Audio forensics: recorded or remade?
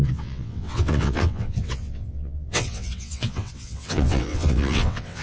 remade